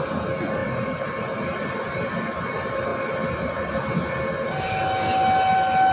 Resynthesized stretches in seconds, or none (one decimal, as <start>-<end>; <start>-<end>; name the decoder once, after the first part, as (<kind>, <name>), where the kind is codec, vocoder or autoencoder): none